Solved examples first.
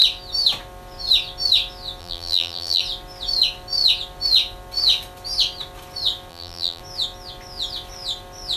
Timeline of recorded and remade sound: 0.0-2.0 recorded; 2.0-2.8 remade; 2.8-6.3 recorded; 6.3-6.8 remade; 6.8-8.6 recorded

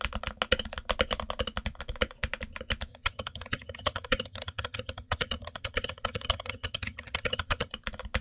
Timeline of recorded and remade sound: 0.0-2.9 recorded; 2.9-7.7 remade; 7.7-8.2 recorded

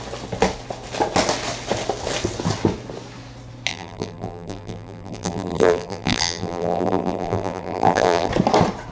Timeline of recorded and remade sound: 0.0-3.7 recorded; 3.7-8.3 remade; 8.3-8.9 recorded

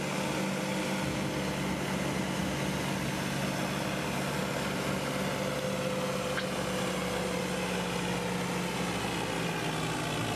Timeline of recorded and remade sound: 0.0-10.4 recorded

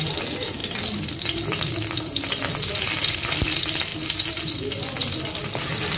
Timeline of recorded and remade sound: 0.0-0.6 recorded; 0.6-2.8 remade; 2.8-3.9 recorded; 3.9-4.4 remade; 4.4-6.0 recorded